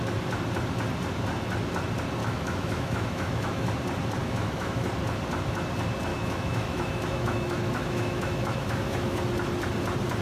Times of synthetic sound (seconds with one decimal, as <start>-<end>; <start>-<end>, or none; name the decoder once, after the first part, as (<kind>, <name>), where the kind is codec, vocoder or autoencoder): 2.2-3.7 (autoencoder, DAC-VAE); 4.2-4.9; 6.1-9.2